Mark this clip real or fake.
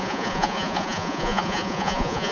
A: fake